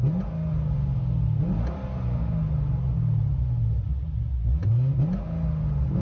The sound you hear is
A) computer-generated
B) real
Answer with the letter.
B